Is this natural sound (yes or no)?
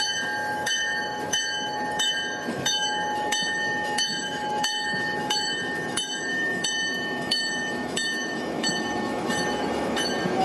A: no